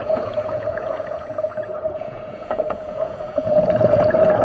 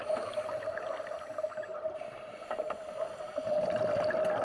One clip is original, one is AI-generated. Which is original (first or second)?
second